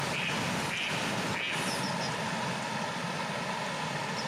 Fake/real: real